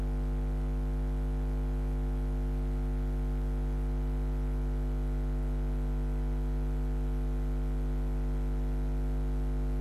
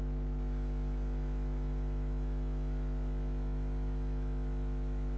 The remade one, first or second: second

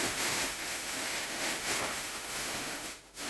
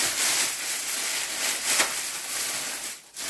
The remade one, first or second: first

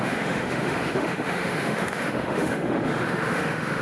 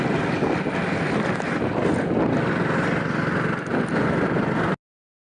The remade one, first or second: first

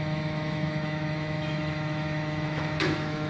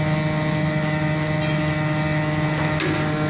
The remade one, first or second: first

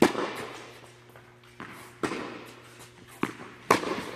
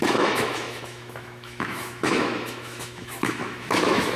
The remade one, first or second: second